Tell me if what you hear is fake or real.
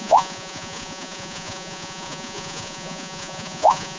fake